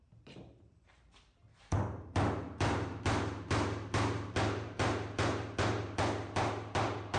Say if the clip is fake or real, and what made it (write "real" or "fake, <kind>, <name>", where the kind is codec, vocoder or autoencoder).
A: fake, vocoder, BigVGAN v2